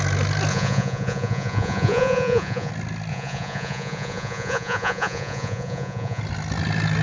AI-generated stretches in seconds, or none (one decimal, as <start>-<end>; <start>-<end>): 0.5-2.7; 3.1-6.2